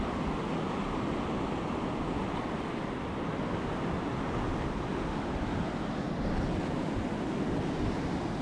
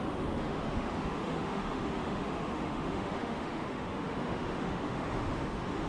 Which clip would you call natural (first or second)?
first